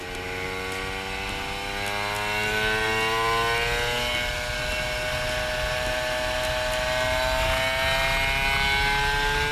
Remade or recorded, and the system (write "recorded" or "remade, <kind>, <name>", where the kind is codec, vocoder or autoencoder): recorded